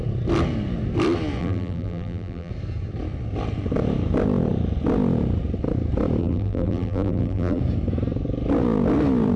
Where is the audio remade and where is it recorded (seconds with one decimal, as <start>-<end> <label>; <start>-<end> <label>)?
0.0-1.4 recorded; 1.4-2.5 remade; 2.5-6.2 recorded; 6.2-7.6 remade; 7.6-9.4 recorded